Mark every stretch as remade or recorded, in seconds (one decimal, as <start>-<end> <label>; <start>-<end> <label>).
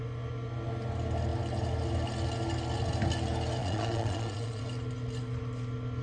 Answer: 0.0-3.6 recorded; 3.6-4.6 remade; 4.6-6.0 recorded